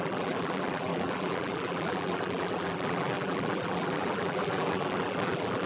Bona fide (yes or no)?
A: no